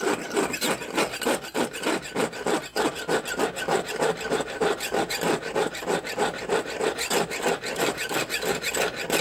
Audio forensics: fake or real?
fake